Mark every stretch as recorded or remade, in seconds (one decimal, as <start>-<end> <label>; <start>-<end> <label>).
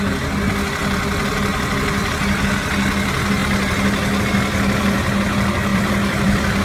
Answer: 0.0-5.7 recorded; 5.7-6.6 remade